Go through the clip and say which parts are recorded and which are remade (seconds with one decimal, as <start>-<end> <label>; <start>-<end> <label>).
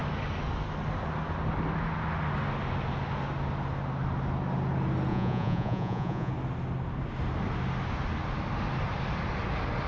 0.0-5.1 recorded; 5.1-6.3 remade; 6.3-9.9 recorded